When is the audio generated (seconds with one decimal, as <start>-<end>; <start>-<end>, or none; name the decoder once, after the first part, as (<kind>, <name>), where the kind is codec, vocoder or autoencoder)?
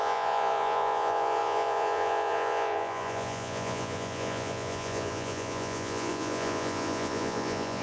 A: 0.0-7.8 (vocoder, Vocos)